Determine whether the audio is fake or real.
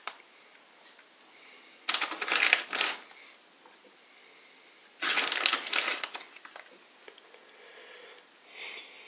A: real